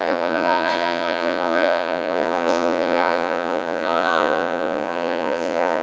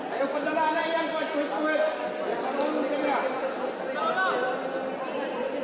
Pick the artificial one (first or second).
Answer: first